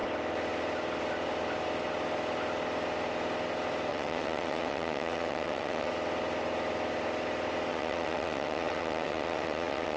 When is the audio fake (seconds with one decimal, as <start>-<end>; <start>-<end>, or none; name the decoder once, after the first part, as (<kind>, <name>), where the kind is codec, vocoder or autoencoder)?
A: 3.9-5.9 (vocoder, WaveNeXt); 7.7-10.0